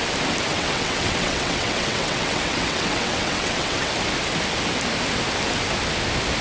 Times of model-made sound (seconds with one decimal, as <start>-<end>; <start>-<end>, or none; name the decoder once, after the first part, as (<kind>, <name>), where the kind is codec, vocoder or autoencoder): 0.5-3.9 (vocoder, WaveNeXt)